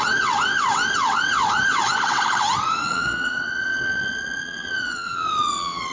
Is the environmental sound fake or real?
fake